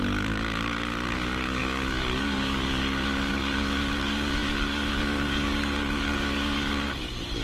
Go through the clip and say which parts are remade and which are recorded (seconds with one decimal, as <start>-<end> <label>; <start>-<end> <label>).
0.0-7.4 remade